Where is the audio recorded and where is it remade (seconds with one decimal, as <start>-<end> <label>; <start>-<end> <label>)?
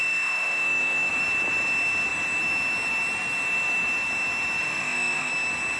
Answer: 0.0-1.1 remade; 1.1-4.6 recorded; 4.6-5.3 remade; 5.3-5.8 recorded